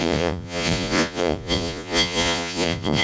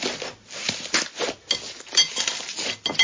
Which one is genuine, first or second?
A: second